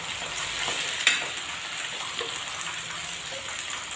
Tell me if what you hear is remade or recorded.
recorded